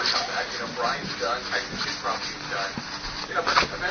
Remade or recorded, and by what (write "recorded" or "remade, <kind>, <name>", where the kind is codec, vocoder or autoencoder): recorded